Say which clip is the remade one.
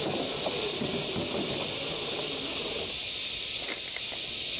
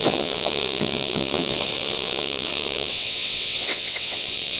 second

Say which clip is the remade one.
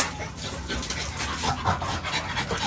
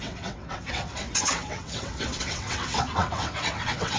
second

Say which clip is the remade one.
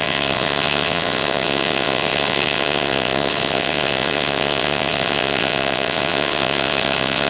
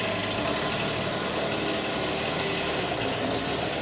first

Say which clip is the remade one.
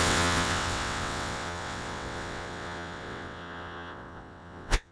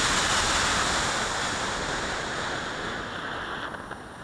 first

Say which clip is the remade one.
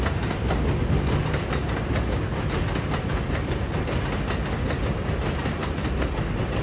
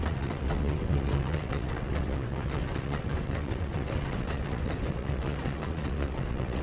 second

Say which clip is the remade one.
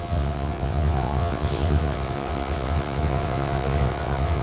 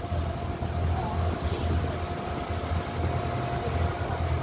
first